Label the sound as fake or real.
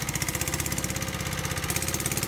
real